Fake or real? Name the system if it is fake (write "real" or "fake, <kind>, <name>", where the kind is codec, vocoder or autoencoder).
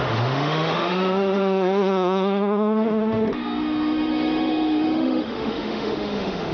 fake, autoencoder, DAC-VAE